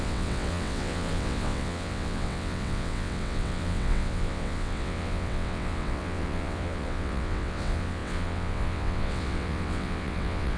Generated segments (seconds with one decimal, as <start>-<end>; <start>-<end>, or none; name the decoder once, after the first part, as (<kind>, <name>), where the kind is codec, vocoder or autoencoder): 0.0-10.6 (vocoder, WaveNeXt)